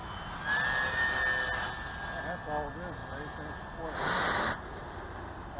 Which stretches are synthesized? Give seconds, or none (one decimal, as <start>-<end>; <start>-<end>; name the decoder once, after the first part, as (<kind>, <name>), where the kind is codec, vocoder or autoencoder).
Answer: none